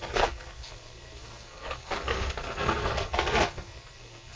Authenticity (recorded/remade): remade